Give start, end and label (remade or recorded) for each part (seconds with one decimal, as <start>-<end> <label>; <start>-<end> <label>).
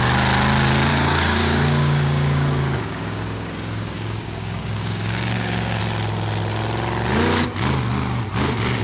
0.0-0.9 recorded; 0.9-5.8 remade; 5.8-8.8 recorded